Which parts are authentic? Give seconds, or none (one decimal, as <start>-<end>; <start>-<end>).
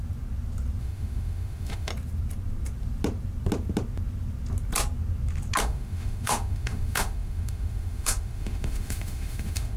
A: 0.0-0.8; 1.9-5.6